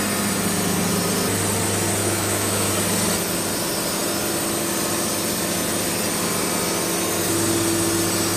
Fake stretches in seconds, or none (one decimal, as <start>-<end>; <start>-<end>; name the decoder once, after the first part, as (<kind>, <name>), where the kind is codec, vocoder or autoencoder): 2.0-2.7 (autoencoder, DAC-VAE)